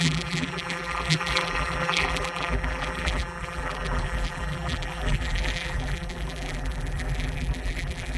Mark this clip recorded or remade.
remade